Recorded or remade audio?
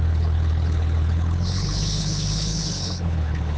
remade